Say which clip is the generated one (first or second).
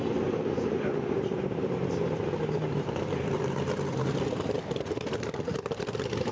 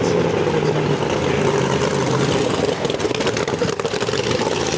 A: first